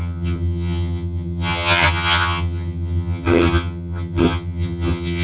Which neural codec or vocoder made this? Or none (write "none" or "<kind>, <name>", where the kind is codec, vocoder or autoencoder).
vocoder, HiFi-GAN